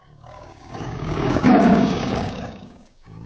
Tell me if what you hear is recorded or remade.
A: remade